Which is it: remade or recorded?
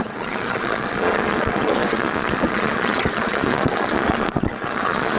remade